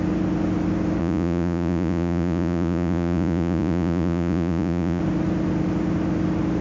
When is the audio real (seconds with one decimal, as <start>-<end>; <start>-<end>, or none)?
0.0-1.0; 5.0-6.6